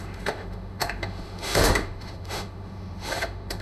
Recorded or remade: remade